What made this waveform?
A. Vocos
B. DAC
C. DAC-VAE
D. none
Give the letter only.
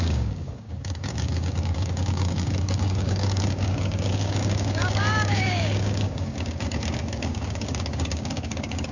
B